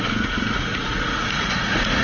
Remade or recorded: remade